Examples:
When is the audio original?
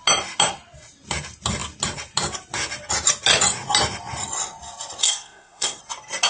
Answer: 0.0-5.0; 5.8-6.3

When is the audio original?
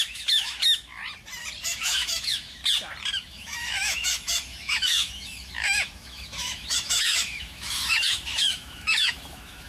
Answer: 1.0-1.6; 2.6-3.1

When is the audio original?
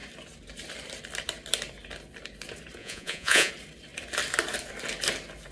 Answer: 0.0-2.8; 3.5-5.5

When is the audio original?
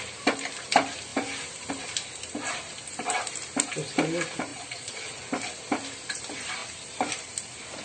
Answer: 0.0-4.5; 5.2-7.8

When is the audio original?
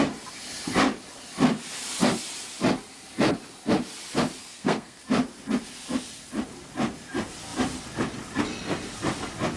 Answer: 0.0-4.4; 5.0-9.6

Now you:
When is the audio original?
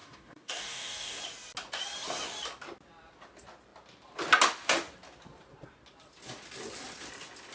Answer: 1.2-7.5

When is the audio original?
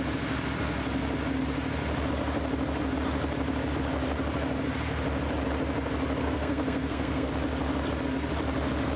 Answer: 0.0-6.2; 7.3-9.0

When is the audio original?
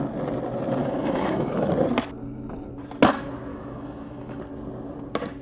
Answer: 0.0-0.8; 1.7-3.5; 4.4-5.4